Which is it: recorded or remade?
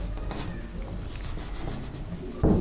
recorded